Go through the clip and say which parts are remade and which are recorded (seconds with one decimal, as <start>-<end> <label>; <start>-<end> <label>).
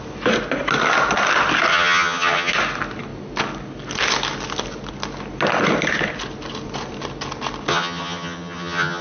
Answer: 0.0-1.7 recorded; 1.7-2.5 remade; 2.5-7.7 recorded; 7.7-9.0 remade